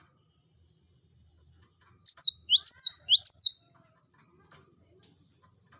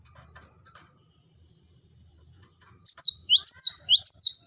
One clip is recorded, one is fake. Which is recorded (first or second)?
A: first